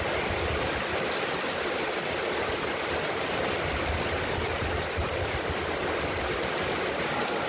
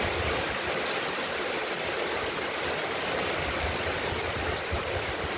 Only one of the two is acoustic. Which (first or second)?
second